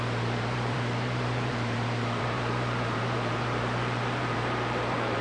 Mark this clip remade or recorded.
remade